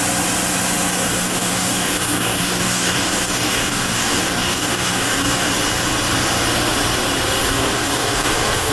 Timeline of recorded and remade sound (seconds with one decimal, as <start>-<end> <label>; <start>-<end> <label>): 0.0-0.9 recorded; 0.9-5.5 remade; 5.5-7.4 recorded; 7.4-8.7 remade